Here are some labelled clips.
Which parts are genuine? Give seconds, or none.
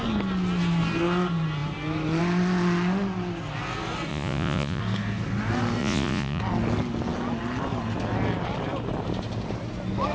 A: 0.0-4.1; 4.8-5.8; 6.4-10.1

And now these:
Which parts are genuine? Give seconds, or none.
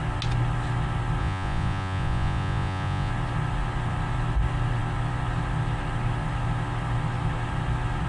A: 0.0-1.2; 3.1-8.1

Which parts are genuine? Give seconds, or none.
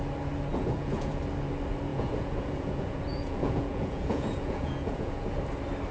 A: 0.0-0.5; 1.2-1.9; 5.4-5.9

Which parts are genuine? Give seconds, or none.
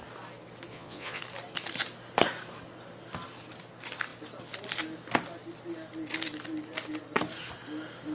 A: 0.0-0.7; 1.2-8.1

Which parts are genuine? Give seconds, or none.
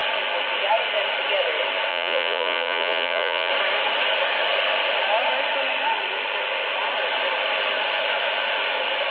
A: 0.0-1.9; 3.5-9.1